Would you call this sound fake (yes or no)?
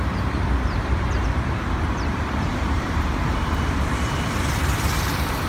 yes